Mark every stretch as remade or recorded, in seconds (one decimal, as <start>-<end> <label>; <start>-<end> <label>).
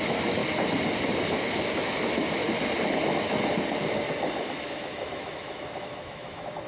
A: 0.0-0.4 remade; 0.4-1.8 recorded; 1.8-2.4 remade; 2.4-4.4 recorded; 4.4-6.7 remade